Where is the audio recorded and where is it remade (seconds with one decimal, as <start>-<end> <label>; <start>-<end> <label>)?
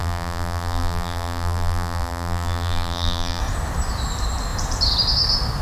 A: 0.0-3.4 remade; 3.4-5.6 recorded